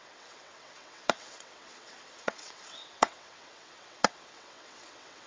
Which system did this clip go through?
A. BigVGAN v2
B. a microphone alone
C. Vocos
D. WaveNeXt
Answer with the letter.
D